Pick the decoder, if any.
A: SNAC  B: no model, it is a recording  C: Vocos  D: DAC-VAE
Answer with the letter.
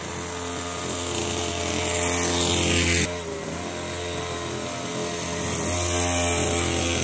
B